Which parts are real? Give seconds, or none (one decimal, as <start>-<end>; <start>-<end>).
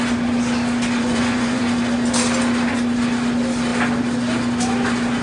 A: 0.0-1.0; 1.6-5.2